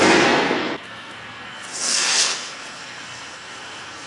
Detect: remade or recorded remade